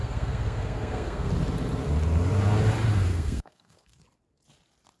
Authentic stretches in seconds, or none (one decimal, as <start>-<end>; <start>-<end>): 1.3-3.1; 4.0-5.0